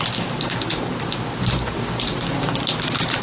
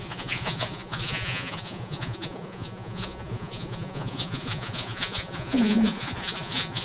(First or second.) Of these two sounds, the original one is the first